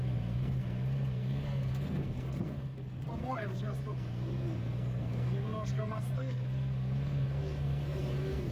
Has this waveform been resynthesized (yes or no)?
yes